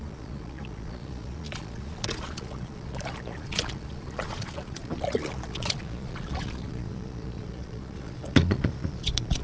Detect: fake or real fake